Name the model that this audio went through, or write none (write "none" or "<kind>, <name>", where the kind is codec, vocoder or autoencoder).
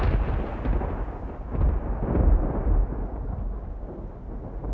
none